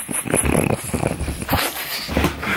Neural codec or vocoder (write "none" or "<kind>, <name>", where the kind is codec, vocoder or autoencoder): none